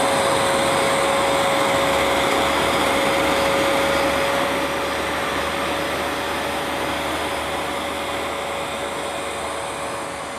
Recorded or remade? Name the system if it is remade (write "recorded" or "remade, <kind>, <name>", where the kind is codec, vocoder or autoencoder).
recorded